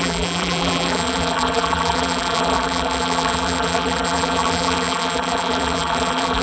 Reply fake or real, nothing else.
fake